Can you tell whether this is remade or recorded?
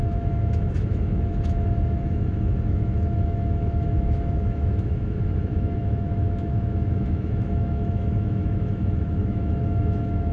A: remade